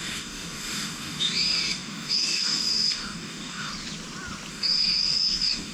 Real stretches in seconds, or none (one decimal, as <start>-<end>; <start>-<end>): 3.7-4.5